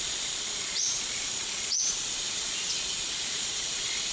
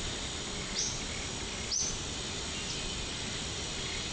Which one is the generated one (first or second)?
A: first